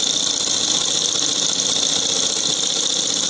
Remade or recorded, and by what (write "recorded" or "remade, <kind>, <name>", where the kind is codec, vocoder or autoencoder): recorded